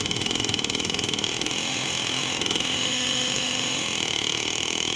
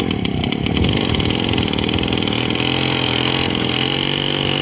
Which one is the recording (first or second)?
second